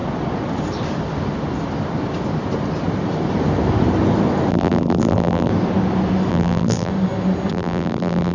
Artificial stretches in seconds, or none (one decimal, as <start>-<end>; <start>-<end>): 4.5-5.5; 6.3-6.9; 7.5-8.3